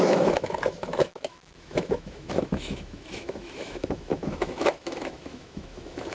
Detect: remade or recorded remade